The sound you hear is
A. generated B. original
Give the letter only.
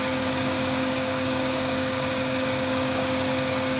A